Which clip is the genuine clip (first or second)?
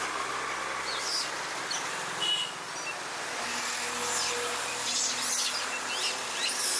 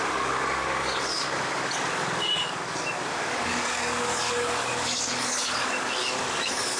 first